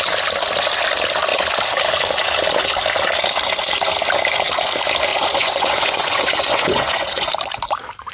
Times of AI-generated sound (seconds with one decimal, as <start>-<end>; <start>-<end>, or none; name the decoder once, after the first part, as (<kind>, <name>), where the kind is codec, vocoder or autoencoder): 5.1-7.3 (vocoder, Vocos)